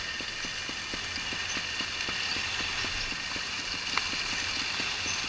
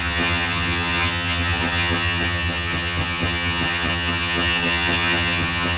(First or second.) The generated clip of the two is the second